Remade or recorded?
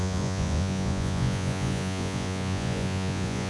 remade